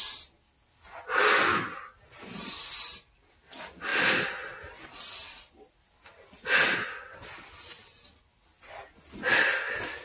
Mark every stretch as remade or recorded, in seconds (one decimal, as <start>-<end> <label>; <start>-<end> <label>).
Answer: 0.0-10.0 recorded